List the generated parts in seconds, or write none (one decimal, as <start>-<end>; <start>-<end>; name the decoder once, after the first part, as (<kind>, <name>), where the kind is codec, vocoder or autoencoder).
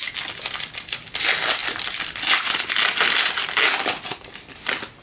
none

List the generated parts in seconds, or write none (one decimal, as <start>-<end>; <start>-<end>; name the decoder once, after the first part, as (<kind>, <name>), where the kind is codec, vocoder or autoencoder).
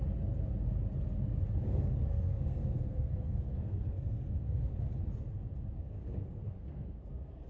2.1-4.7 (codec, SNAC); 5.8-7.5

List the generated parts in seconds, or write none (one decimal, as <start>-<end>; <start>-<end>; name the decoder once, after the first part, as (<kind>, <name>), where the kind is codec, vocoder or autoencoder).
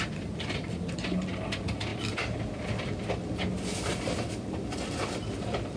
none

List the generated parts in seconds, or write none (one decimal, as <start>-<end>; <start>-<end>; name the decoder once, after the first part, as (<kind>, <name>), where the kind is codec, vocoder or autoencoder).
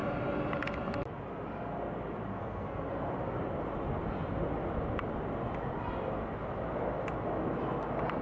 2.3-2.9 (codec, SNAC)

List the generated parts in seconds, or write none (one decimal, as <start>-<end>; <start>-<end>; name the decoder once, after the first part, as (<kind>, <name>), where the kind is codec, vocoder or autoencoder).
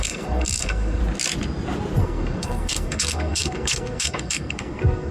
0.0-1.0 (codec, SNAC); 2.0-5.1